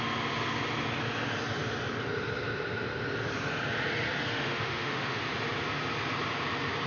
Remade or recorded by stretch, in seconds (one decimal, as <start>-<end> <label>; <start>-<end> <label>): 0.0-4.3 recorded; 4.3-5.2 remade; 5.2-6.9 recorded